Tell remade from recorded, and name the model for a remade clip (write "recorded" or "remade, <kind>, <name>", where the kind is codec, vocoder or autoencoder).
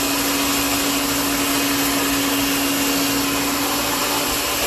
recorded